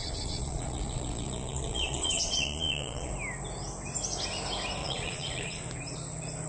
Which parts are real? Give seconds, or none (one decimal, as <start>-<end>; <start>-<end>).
3.1-4.8; 5.6-6.5